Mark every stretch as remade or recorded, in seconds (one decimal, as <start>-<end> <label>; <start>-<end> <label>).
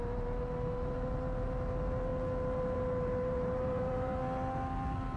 0.0-2.1 remade; 2.1-2.6 recorded; 2.6-4.2 remade; 4.2-5.2 recorded